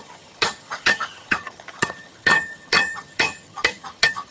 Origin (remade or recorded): remade